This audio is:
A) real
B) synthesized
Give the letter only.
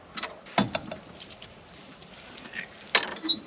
A